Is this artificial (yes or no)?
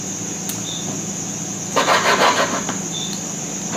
no